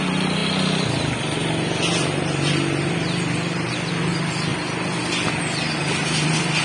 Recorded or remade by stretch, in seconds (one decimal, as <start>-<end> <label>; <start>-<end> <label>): 0.0-6.6 recorded